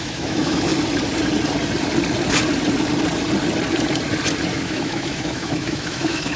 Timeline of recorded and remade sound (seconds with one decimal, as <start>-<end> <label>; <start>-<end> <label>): 0.0-0.7 remade; 0.7-4.5 recorded; 4.5-6.4 remade